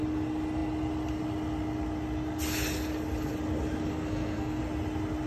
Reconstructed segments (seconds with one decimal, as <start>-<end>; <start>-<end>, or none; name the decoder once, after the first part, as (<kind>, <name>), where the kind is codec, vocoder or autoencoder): 3.9-4.6 (codec, SNAC)